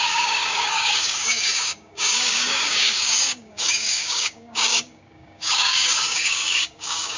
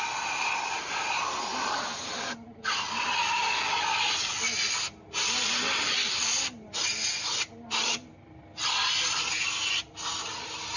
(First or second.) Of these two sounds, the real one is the second